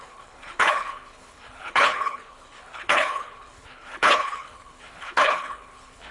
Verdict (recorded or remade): remade